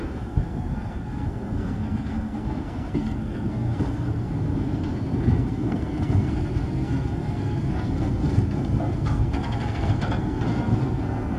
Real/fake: fake